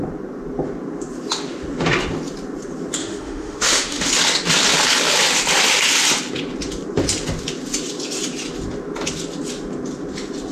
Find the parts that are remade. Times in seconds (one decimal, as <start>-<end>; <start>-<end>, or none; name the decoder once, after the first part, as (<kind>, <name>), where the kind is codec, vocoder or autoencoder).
3.0-4.1 (autoencoder, DAC-VAE)